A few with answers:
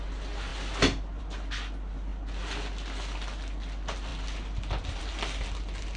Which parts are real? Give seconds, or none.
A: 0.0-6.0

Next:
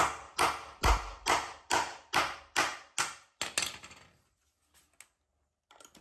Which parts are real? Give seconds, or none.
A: 0.0-6.0

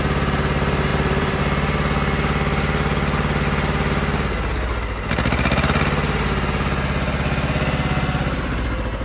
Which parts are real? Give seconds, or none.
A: 0.0-0.9; 1.4-9.0